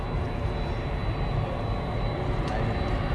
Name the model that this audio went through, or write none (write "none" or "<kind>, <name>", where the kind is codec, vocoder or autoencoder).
none